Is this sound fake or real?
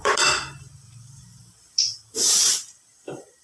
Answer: fake